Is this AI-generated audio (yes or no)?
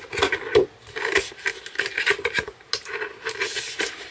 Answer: no